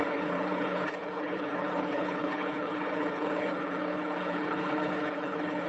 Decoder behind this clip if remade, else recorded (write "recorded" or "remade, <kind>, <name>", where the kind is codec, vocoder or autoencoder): remade, codec, HILCodec